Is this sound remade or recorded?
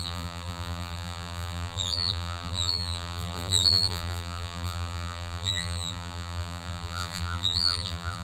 remade